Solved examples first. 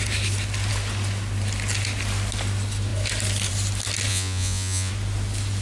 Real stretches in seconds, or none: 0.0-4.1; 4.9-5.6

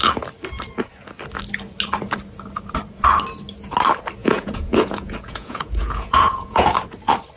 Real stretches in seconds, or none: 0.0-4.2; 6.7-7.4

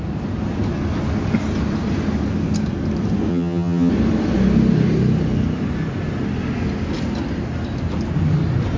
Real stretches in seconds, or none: 0.0-3.3; 3.9-8.8

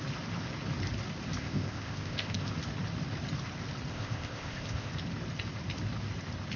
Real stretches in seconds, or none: 0.0-1.4; 2.5-3.9; 4.9-6.6